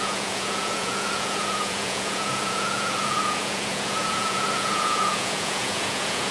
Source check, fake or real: fake